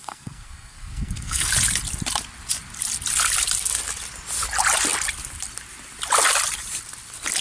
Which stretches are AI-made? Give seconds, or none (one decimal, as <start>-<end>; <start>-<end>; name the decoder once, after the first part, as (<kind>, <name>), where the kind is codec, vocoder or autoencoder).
0.0-1.5 (codec, SNAC)